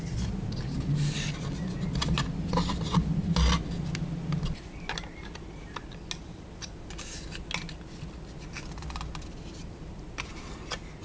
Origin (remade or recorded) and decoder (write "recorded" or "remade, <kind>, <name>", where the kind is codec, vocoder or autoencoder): recorded